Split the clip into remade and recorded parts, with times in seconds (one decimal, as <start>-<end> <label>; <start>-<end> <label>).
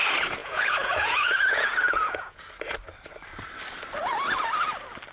0.0-0.4 recorded; 0.4-2.4 remade; 2.4-5.1 recorded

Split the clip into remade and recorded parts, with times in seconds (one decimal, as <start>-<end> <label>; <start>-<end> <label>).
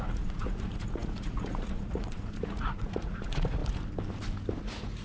0.0-3.6 remade; 3.6-4.6 recorded; 4.6-5.0 remade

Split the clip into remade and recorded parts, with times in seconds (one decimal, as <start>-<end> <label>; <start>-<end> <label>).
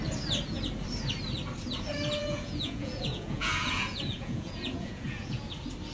0.0-2.2 recorded; 2.2-5.5 remade; 5.5-5.9 recorded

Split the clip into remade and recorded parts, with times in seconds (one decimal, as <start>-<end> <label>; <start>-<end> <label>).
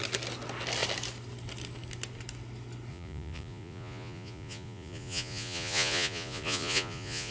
0.0-2.9 recorded; 2.9-7.3 remade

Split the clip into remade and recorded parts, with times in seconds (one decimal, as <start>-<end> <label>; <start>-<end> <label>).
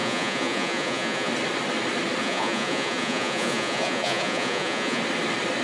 0.0-1.3 remade; 1.3-2.2 recorded; 2.2-5.0 remade; 5.0-5.6 recorded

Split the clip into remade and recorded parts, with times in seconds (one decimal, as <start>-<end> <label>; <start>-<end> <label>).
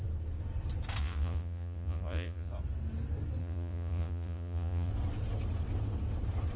0.0-1.0 recorded; 1.0-2.5 remade; 2.5-3.4 recorded; 3.4-4.9 remade; 4.9-6.6 recorded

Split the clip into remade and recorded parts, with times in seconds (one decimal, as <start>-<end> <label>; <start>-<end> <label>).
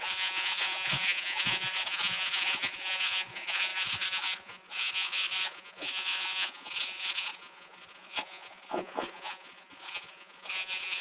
0.0-11.0 remade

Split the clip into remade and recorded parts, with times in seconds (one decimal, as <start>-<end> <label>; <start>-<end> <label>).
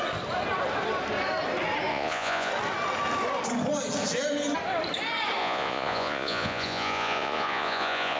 0.0-1.9 recorded; 1.9-2.5 remade; 2.5-5.4 recorded; 5.4-8.2 remade